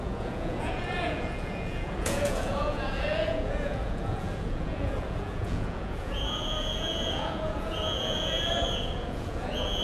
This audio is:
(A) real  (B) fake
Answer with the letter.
B